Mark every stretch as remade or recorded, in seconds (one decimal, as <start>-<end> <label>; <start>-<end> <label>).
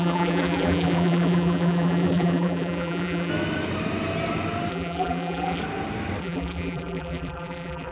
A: 0.0-3.3 remade; 3.3-4.7 recorded; 4.7-5.6 remade; 5.6-6.2 recorded; 6.2-7.9 remade